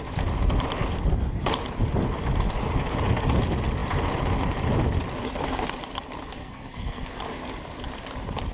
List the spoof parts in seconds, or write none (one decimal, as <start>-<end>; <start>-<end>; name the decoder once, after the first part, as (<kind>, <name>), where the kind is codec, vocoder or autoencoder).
6.4-7.2 (codec, SNAC)